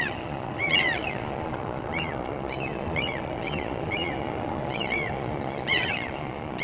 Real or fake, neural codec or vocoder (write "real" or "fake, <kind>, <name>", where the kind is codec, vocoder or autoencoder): fake, vocoder, Vocos